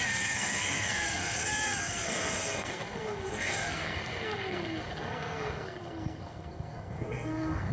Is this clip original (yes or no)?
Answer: no